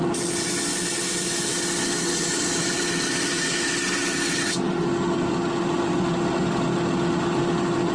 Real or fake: real